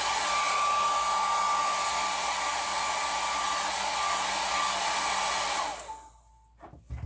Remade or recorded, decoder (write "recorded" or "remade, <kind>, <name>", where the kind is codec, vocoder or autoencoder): recorded